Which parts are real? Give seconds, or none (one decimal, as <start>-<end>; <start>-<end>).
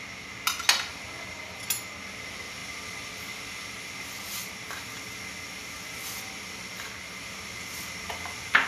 0.0-8.7